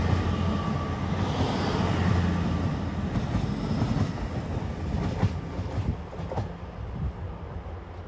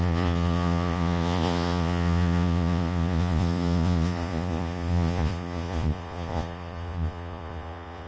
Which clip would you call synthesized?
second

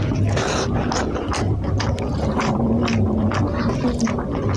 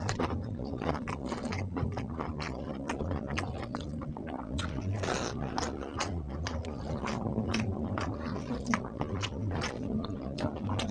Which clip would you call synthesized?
second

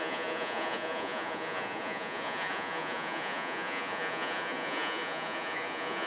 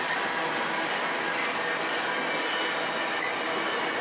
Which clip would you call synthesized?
first